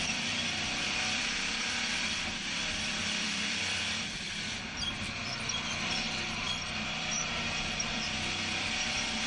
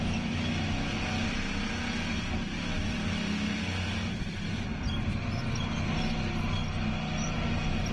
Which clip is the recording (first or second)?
second